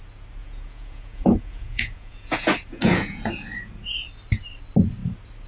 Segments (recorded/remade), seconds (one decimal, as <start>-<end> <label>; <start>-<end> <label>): 0.0-0.4 recorded; 0.4-3.7 remade; 3.7-5.5 recorded